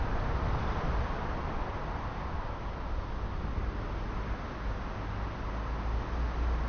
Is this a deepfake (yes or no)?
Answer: no